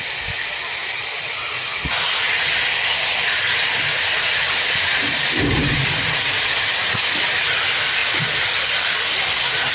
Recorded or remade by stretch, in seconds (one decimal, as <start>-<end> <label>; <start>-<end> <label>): 0.0-3.9 recorded; 3.9-6.9 remade; 6.9-9.7 recorded